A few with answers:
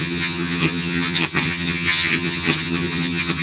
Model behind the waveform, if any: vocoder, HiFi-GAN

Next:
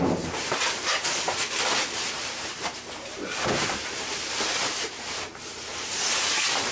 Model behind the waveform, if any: vocoder, BigVGAN v2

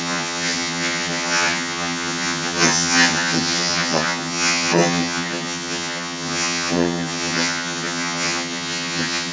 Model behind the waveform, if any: vocoder, HiFi-GAN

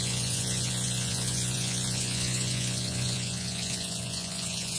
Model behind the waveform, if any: vocoder, Vocos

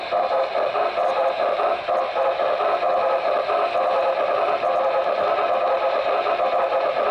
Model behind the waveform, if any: none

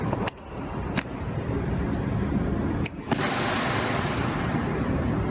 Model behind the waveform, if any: none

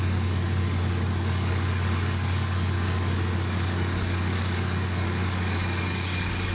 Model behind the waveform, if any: codec, DAC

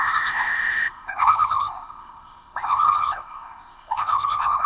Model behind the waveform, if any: codec, ZipCodec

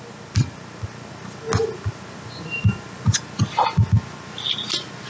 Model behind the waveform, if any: none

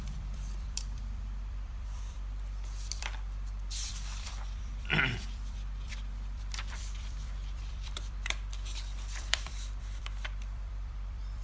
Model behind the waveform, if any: vocoder, BigVGAN v2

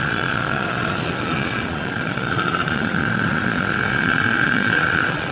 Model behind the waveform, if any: vocoder, Vocos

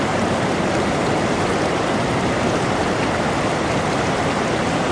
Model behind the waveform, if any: vocoder, BigVGAN v2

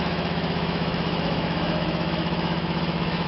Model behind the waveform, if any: autoencoder, DAC-VAE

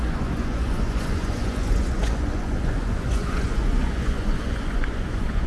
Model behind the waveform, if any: vocoder, Vocos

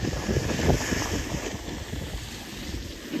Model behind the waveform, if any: vocoder, BigVGAN v2